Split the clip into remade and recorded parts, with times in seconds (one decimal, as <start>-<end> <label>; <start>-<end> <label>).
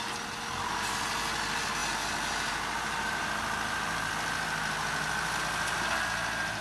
0.0-6.6 recorded